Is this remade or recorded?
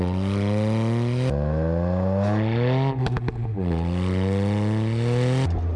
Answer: recorded